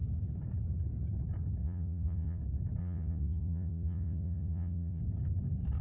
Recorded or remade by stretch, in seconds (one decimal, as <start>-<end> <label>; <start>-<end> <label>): 0.0-1.6 recorded; 1.6-2.4 remade; 2.4-2.8 recorded; 2.8-5.0 remade; 5.0-5.8 recorded